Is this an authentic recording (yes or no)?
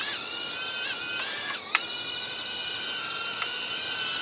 yes